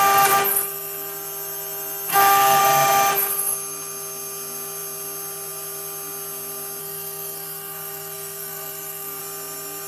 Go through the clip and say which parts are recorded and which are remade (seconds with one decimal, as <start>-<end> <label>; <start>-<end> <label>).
0.0-2.1 recorded; 2.1-2.6 remade; 2.6-6.8 recorded; 6.8-9.2 remade; 9.2-9.9 recorded